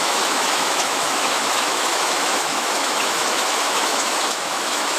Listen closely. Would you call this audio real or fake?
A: fake